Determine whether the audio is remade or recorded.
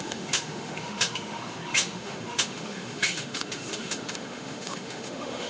remade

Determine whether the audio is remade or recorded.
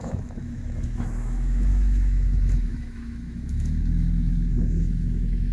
remade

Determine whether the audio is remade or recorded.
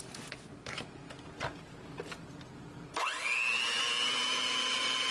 recorded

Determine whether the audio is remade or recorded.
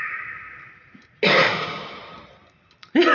recorded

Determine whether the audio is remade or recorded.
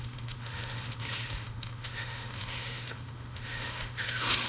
remade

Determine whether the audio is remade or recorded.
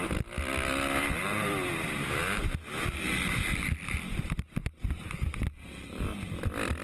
recorded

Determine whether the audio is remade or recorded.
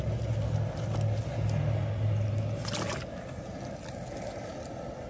recorded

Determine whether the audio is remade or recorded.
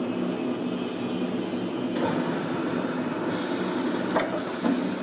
recorded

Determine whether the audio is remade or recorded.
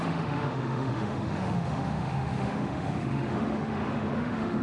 remade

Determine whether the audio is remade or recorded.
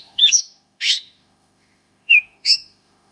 remade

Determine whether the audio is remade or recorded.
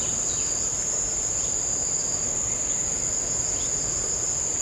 recorded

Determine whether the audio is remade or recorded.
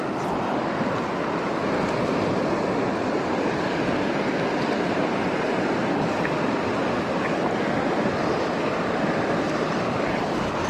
recorded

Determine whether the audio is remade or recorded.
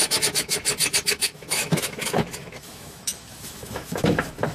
remade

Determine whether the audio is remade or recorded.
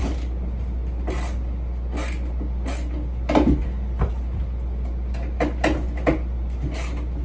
recorded